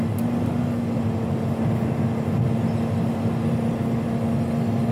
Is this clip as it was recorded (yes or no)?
yes